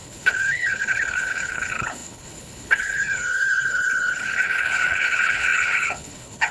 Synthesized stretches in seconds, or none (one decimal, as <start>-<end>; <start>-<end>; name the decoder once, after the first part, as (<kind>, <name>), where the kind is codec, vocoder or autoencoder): 0.0-6.5 (codec, HILCodec)